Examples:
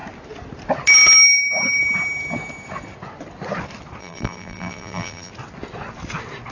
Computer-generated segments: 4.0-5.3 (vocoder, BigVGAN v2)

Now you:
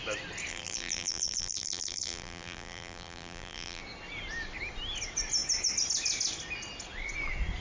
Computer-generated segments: 0.5-3.8 (vocoder, BigVGAN v2)

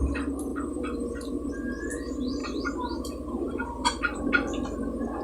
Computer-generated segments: 0.5-1.5 (vocoder, BigVGAN v2); 2.4-4.3

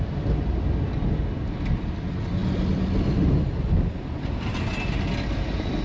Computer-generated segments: 2.4-4.5 (vocoder, BigVGAN v2)

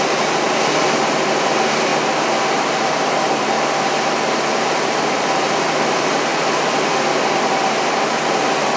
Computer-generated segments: 0.0-1.9 (vocoder, BigVGAN v2); 2.6-6.3; 7.4-8.8